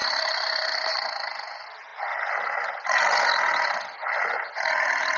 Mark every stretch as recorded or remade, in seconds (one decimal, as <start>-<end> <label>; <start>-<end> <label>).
0.0-5.2 recorded